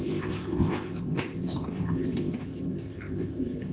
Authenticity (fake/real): fake